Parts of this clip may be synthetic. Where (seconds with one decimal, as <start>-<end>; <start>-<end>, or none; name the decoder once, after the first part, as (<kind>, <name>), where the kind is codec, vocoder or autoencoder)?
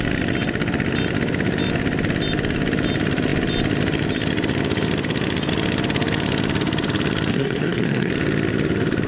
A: 7.3-8.1 (codec, SNAC)